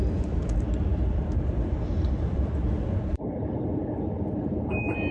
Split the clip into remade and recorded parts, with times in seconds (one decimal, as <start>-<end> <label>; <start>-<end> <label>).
0.0-0.9 recorded; 0.9-3.7 remade; 3.7-5.1 recorded